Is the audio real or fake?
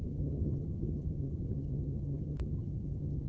fake